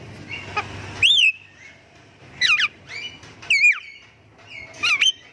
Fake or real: real